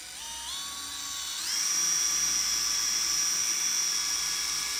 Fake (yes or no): no